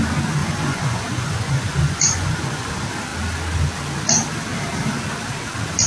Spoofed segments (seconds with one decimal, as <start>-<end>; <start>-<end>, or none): 0.4-2.7